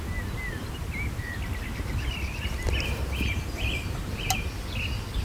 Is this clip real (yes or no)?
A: yes